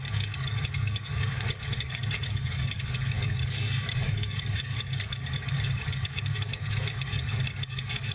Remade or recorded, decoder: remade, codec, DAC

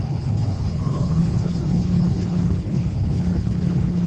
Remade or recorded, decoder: remade, codec, HILCodec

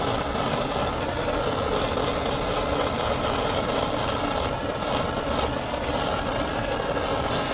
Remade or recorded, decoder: recorded